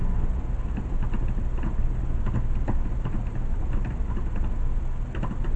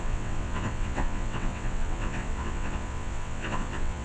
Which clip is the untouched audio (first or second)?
first